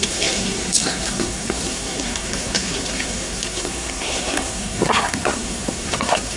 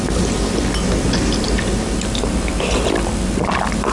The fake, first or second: first